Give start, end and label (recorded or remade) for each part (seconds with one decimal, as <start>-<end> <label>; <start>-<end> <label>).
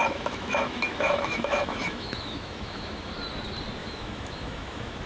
0.0-3.1 remade; 3.1-3.8 recorded; 3.8-5.1 remade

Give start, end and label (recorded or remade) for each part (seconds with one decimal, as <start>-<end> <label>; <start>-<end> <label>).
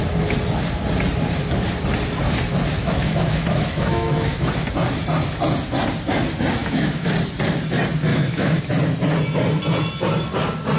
0.0-2.8 recorded; 2.8-4.5 remade; 4.5-6.6 recorded; 6.6-7.1 remade; 7.1-8.1 recorded; 8.1-8.6 remade; 8.6-10.8 recorded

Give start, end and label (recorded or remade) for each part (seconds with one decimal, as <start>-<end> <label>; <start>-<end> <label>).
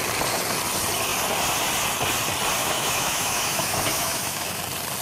0.0-2.6 recorded; 2.6-4.6 remade; 4.6-5.0 recorded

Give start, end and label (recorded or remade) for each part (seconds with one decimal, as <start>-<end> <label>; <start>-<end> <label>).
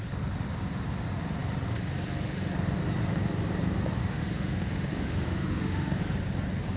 0.0-4.0 recorded; 4.0-6.0 remade; 6.0-6.8 recorded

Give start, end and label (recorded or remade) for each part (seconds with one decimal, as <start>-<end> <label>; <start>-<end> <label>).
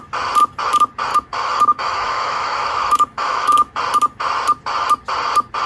0.0-1.1 recorded; 1.1-3.8 remade; 3.8-5.7 recorded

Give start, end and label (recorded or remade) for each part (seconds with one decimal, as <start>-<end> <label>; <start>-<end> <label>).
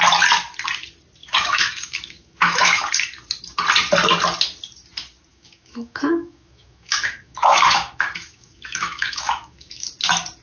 0.0-1.2 recorded; 1.2-2.9 remade; 2.9-5.3 recorded; 5.3-9.9 remade; 9.9-10.4 recorded